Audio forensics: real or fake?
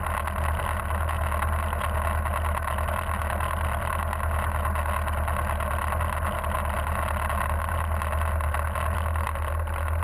real